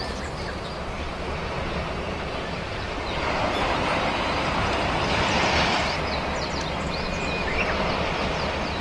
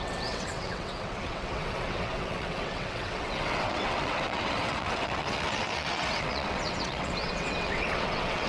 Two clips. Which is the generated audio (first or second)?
second